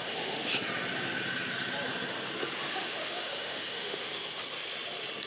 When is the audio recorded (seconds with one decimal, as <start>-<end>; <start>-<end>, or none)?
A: 0.5-2.7; 4.2-5.3